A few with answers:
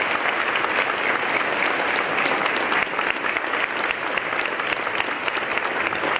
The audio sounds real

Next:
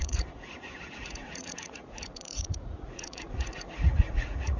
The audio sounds fake